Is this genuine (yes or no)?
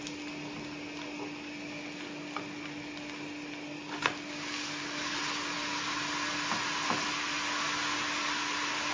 yes